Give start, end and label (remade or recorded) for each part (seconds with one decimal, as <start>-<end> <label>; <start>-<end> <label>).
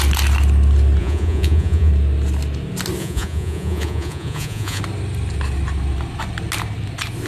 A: 0.0-1.0 recorded; 1.0-1.9 remade; 1.9-3.0 recorded; 3.0-4.8 remade; 4.8-7.3 recorded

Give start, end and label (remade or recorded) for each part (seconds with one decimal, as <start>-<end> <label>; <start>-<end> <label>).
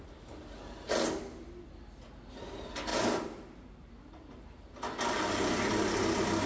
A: 0.0-6.5 recorded